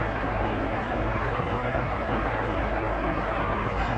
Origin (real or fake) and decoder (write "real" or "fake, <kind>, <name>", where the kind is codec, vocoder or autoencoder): fake, codec, SNAC